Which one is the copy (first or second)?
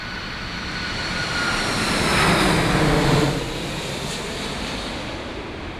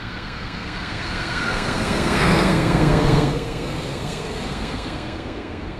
second